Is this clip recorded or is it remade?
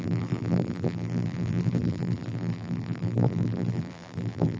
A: remade